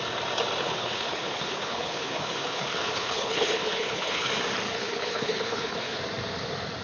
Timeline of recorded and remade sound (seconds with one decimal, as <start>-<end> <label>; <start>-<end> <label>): 0.0-0.6 recorded; 0.6-4.3 remade; 4.3-4.7 recorded; 4.7-6.0 remade; 6.0-6.8 recorded